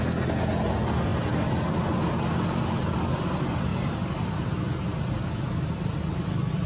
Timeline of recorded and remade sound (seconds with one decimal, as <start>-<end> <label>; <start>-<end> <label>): 0.0-6.7 recorded